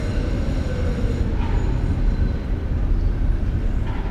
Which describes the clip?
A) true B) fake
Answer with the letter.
A